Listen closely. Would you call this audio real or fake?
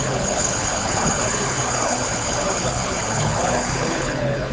fake